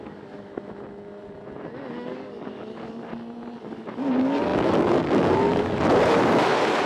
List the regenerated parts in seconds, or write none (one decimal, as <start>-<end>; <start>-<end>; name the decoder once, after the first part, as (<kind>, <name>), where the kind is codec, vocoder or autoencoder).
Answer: 0.0-0.5 (codec, DAC); 1.9-3.1; 3.6-6.9